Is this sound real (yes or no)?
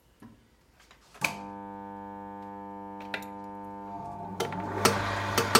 yes